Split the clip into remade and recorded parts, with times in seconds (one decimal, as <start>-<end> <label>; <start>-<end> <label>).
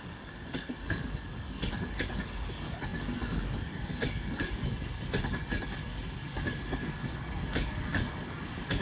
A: 0.0-8.8 remade